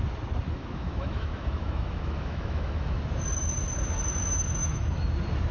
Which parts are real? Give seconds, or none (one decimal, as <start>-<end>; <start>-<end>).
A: 0.0-0.5; 3.0-4.6; 5.1-5.5